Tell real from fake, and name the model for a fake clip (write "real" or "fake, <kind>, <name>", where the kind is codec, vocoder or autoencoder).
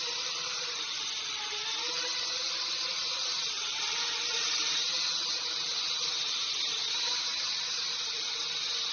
fake, vocoder, BigVGAN v2